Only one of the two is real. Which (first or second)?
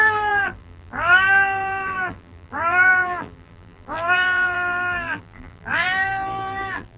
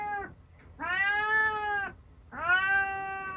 second